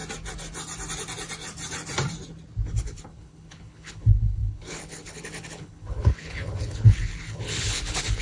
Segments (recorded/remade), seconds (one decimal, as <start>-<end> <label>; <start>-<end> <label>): 0.0-2.8 recorded; 2.8-8.2 remade